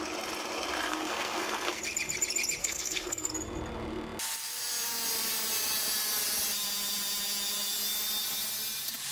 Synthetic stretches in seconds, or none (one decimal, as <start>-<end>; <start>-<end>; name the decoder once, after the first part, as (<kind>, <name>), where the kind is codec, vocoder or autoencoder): 0.9-1.8 (codec, SNAC); 2.6-3.3